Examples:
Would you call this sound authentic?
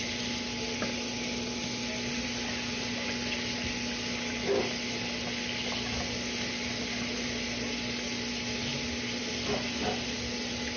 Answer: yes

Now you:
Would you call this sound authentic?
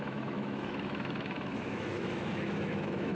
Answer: no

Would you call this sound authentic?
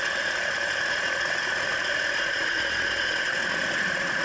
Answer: no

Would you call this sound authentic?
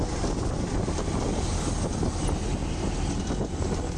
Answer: yes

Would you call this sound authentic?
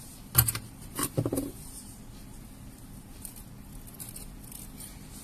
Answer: yes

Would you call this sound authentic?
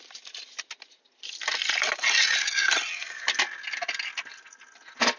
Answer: yes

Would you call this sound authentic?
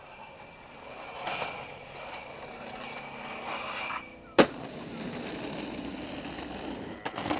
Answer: yes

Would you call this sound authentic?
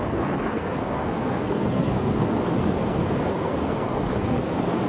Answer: no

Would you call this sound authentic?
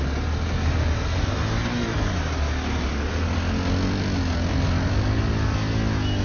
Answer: yes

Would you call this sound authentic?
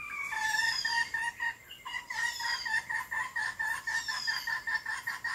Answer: no